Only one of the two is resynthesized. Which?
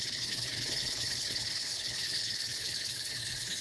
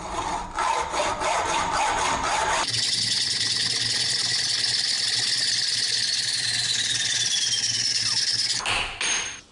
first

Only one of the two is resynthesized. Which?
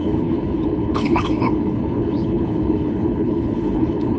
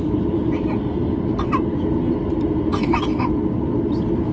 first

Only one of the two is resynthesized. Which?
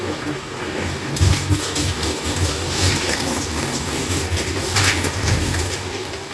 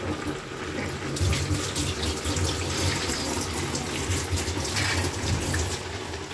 first